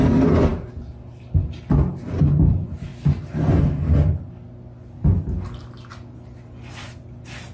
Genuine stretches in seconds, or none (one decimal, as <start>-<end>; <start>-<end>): 0.0-7.5